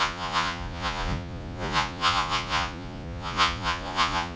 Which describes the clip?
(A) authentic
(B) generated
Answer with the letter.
B